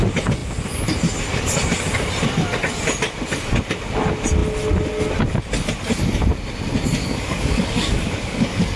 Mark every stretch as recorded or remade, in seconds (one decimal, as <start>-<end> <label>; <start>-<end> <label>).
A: 0.0-7.0 recorded; 7.0-8.8 remade